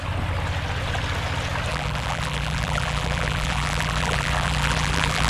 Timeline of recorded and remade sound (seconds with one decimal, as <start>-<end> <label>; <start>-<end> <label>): 0.0-1.7 recorded; 1.7-5.3 remade